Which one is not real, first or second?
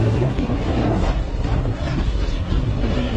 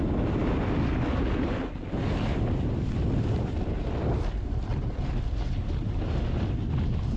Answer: first